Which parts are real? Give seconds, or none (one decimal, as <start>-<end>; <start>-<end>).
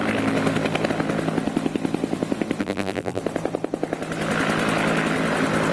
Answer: 0.0-2.6; 3.2-5.7